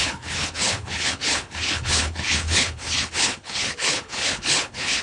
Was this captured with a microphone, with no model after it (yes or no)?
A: no